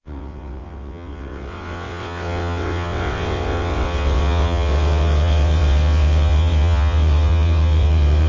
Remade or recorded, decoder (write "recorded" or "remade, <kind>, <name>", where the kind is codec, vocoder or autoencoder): remade, vocoder, WaveNeXt